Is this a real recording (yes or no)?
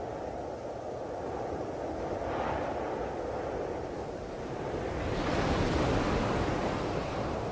yes